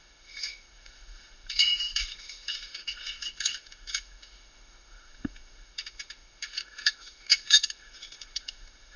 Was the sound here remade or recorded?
remade